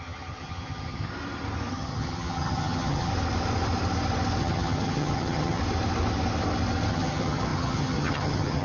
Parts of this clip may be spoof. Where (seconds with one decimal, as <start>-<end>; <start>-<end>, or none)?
0.0-1.1; 1.7-3.1; 4.4-5.6; 6.9-8.6